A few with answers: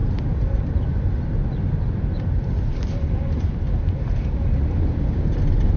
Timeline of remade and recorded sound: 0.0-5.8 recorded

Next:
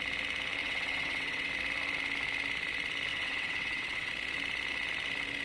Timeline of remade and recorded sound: 0.0-0.6 recorded; 0.6-1.5 remade; 1.5-3.1 recorded; 3.1-4.1 remade; 4.1-5.4 recorded